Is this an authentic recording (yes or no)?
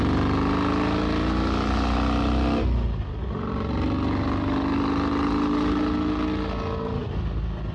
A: yes